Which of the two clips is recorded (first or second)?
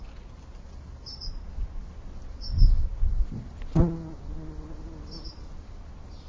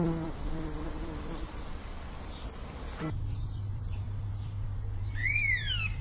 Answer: first